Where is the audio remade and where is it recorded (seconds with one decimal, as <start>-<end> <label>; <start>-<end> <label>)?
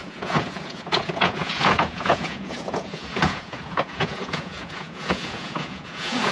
0.0-6.3 remade